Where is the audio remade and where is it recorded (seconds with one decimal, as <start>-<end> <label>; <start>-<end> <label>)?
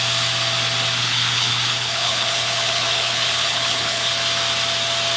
0.0-1.0 recorded; 1.0-4.1 remade; 4.1-5.2 recorded